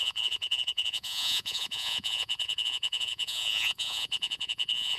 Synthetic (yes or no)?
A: yes